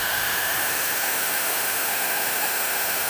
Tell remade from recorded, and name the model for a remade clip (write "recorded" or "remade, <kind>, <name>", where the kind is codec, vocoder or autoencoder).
remade, autoencoder, DAC-VAE